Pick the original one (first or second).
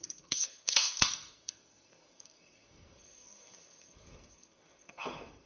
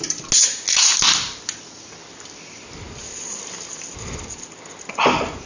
second